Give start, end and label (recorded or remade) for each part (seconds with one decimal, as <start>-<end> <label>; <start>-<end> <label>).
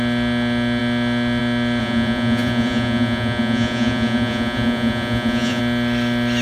0.0-1.8 recorded; 1.8-5.6 remade; 5.6-6.4 recorded